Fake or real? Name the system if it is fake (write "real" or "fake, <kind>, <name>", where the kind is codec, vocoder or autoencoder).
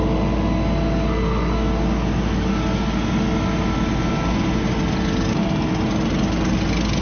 real